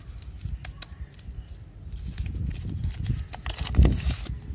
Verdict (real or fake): real